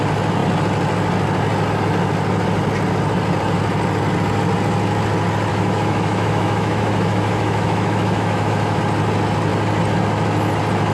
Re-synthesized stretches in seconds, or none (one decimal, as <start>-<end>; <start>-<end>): 5.5-8.8